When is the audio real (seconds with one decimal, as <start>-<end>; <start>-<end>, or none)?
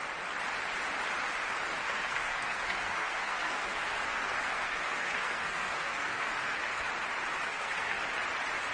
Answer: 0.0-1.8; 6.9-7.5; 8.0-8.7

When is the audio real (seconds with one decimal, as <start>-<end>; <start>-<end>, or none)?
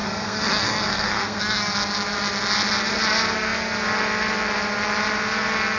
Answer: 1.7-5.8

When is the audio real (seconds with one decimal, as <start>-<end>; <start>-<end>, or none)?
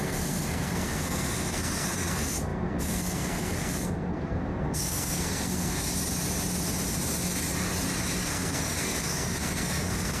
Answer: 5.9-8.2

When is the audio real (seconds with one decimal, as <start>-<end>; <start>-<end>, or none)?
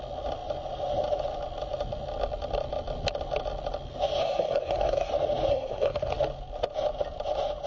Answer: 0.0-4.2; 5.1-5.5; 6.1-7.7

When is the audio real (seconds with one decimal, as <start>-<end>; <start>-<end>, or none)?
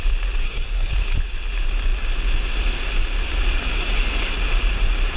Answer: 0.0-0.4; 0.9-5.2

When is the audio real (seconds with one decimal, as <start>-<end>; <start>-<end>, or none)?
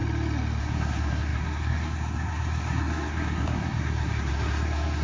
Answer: 0.0-0.6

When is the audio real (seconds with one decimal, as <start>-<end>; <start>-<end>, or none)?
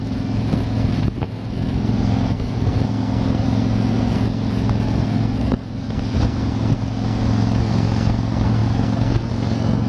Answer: none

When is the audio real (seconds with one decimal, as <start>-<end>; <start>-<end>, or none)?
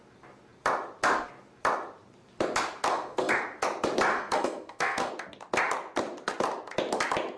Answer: 0.0-2.9; 3.4-4.1; 5.1-7.4